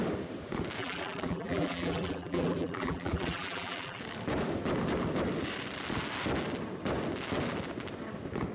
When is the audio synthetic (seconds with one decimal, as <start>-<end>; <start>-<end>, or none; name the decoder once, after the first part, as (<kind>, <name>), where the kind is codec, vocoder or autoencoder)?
0.8-4.0 (vocoder, BigVGAN v2)